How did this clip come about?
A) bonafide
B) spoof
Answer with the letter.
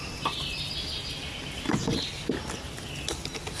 A